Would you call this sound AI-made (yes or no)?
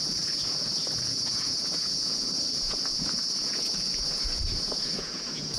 yes